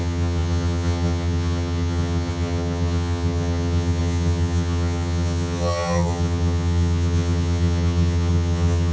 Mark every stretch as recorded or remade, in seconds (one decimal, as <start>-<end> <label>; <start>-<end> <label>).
0.0-8.9 remade